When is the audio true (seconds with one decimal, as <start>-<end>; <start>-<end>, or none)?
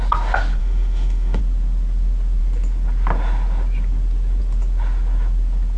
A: 0.0-0.6; 1.4-5.8